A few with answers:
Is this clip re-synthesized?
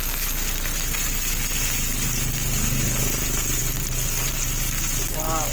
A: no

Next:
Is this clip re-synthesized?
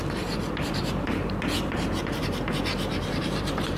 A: yes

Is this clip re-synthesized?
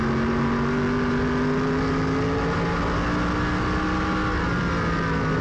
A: no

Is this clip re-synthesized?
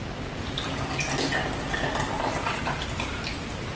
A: no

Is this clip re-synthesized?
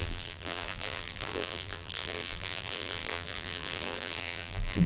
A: yes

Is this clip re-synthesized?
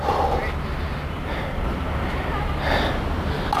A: no